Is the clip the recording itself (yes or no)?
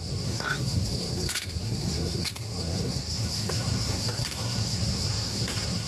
no